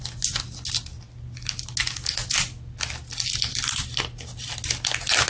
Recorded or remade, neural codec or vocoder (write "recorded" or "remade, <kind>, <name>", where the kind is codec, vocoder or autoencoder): recorded